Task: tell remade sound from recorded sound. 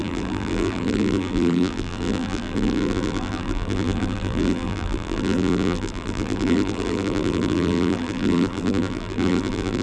remade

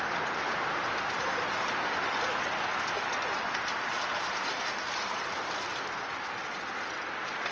recorded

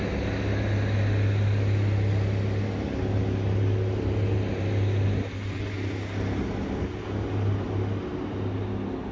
recorded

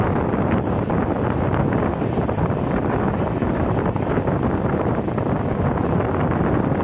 recorded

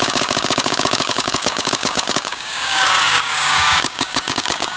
remade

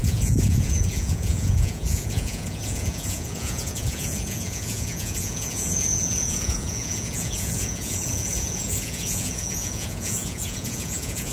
remade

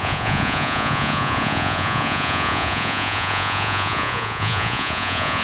remade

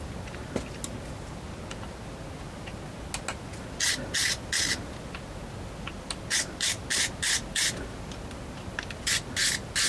recorded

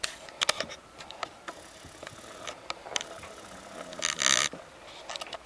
recorded